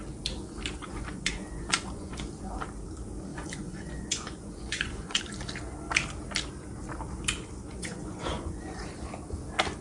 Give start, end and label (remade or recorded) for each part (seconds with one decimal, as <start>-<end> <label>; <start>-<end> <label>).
0.0-0.9 recorded; 0.9-2.4 remade; 2.4-3.3 recorded; 3.3-5.2 remade; 5.2-7.7 recorded; 7.7-8.8 remade; 8.8-9.8 recorded